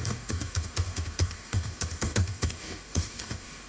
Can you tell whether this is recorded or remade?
remade